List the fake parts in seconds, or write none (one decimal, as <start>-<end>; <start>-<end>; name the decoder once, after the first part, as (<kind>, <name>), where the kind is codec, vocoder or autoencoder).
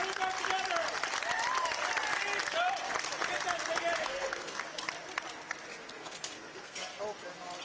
4.0-4.6 (codec, SNAC); 5.7-7.0